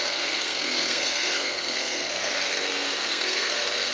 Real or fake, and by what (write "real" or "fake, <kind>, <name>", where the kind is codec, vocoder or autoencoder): fake, codec, SNAC